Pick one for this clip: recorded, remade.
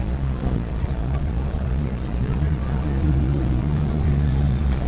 remade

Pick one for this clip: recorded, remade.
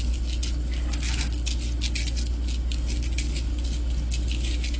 recorded